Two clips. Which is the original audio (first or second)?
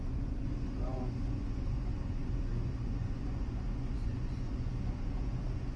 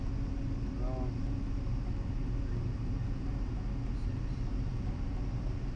second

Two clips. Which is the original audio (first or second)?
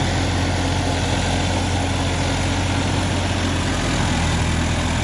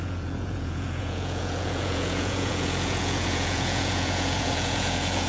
first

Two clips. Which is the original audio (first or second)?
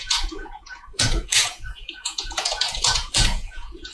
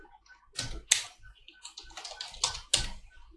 second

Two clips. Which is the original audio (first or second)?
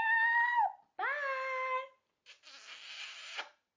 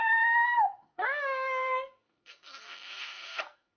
first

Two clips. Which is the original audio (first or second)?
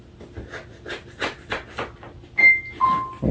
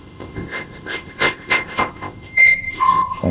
first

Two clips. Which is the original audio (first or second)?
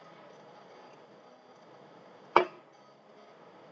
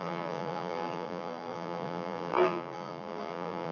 first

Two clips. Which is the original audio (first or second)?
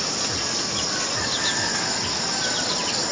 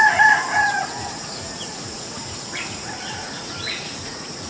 first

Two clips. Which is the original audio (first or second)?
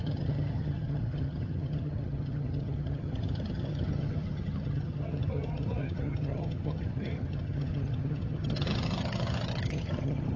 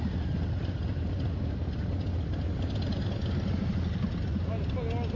second